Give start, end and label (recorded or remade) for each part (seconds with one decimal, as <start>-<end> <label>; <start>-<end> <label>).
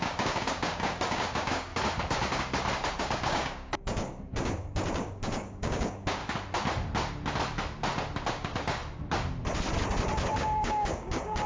0.0-1.7 remade; 1.7-3.0 recorded; 3.0-6.2 remade; 6.2-8.3 recorded; 8.3-8.8 remade; 8.8-10.4 recorded; 10.4-11.5 remade